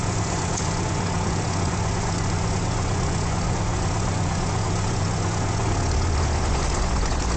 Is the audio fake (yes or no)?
yes